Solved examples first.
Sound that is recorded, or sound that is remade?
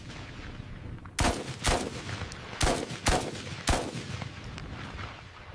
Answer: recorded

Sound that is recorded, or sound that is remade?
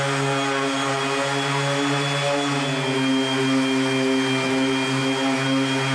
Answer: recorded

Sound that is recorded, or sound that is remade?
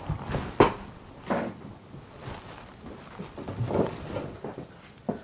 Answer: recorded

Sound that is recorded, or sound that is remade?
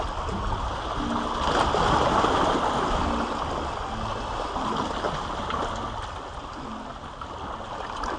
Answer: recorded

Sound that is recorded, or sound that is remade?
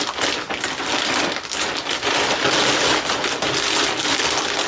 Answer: recorded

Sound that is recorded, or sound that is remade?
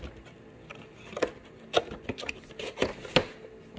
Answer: recorded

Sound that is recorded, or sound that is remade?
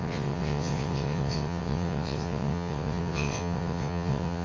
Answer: remade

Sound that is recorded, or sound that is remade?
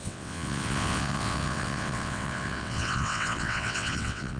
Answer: remade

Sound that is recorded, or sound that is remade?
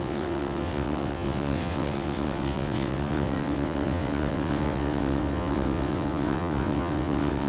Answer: remade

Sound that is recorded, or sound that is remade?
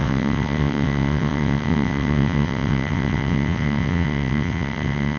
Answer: remade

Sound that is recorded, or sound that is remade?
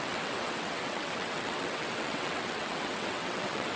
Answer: remade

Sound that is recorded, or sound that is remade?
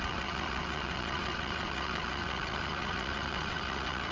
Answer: remade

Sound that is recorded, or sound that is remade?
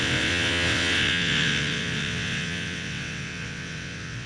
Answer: remade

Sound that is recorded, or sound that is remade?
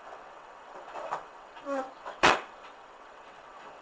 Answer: remade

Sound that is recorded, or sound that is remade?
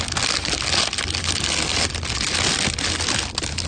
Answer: recorded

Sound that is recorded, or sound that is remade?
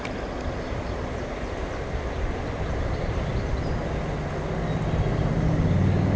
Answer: recorded